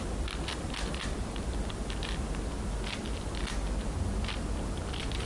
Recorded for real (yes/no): yes